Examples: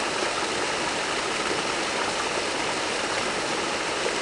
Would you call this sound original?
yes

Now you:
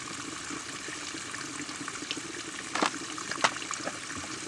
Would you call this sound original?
yes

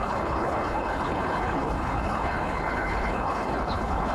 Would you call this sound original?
no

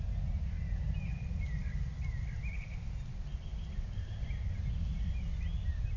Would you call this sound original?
yes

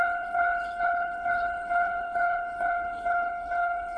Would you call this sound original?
no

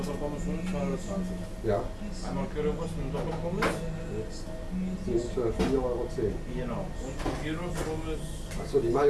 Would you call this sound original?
yes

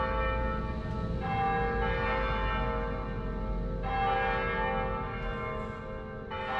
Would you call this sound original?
yes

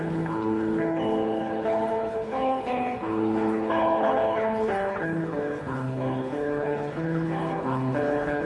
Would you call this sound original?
no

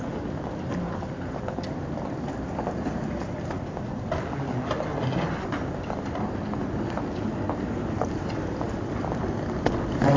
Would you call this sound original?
yes